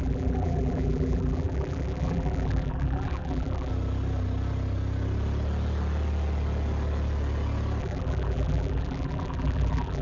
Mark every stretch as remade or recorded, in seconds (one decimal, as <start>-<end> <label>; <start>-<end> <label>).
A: 0.0-3.7 remade; 3.7-7.8 recorded; 7.8-10.0 remade